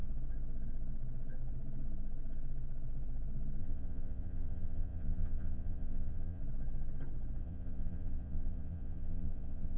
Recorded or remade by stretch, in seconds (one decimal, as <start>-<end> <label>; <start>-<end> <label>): 0.0-3.6 recorded; 3.6-6.4 remade; 6.4-7.4 recorded; 7.4-9.8 remade